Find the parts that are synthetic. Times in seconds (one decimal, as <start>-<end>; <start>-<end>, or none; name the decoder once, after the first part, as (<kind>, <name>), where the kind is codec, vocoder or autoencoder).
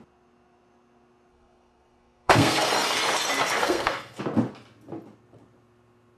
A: 1.3-2.7 (codec, SNAC); 3.6-4.2